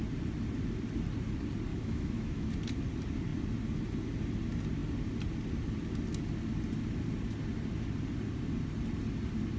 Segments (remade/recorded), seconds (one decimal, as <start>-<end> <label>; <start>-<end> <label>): 0.0-1.7 recorded; 1.7-2.5 remade; 2.5-9.6 recorded